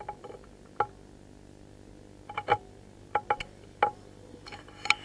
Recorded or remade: recorded